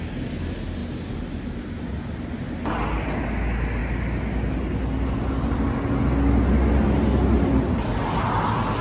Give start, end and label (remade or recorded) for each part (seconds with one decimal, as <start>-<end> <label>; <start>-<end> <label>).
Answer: 0.0-8.8 recorded